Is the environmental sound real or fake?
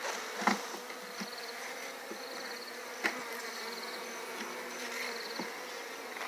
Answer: real